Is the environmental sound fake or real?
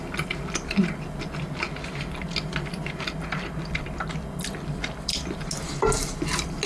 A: real